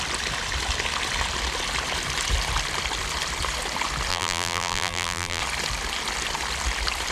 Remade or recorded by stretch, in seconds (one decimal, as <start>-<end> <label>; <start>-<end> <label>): 0.0-4.1 recorded; 4.1-5.4 remade; 5.4-7.1 recorded